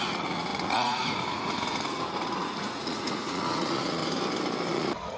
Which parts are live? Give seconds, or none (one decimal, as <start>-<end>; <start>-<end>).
4.0-4.7